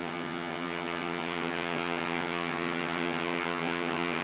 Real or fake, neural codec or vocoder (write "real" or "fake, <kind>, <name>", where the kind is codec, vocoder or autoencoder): fake, vocoder, HiFi-GAN